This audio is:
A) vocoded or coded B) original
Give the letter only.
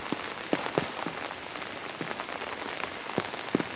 B